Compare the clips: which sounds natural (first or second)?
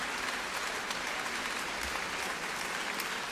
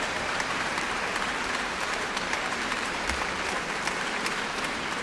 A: first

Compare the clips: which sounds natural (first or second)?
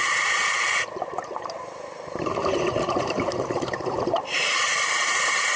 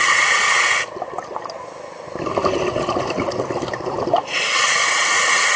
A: second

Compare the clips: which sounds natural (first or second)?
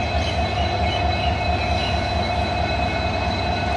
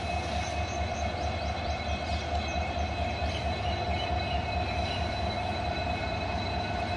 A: first